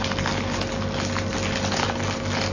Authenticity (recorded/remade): recorded